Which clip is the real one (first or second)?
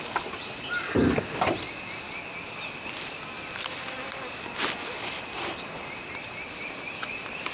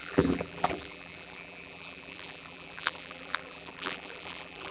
first